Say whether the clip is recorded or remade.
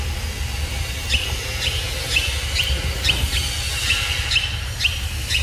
recorded